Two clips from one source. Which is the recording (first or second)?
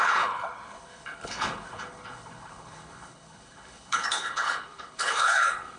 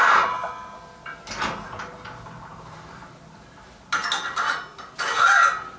second